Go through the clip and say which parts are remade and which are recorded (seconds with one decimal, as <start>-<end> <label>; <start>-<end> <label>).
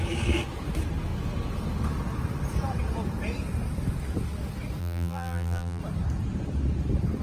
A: 0.0-4.8 recorded; 4.8-5.8 remade; 5.8-7.2 recorded